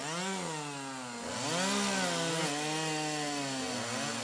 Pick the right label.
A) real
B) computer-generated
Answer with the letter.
A